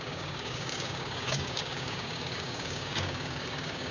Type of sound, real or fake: fake